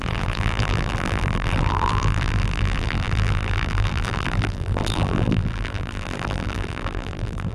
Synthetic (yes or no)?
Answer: yes